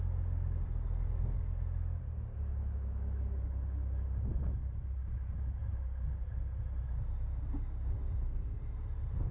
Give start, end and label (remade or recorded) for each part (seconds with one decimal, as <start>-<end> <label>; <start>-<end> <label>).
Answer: 0.0-9.3 recorded